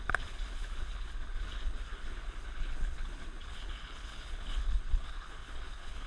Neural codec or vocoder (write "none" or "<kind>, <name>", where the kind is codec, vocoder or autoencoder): codec, HILCodec